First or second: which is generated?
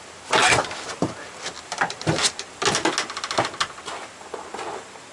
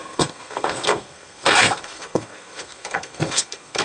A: second